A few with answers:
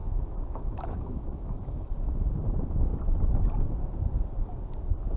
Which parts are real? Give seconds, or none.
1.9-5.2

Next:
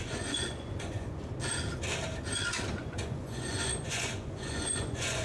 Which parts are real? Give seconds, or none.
1.2-2.8

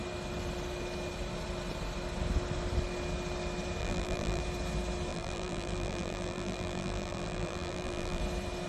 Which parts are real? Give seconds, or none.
0.0-3.8; 4.4-5.1; 8.2-8.7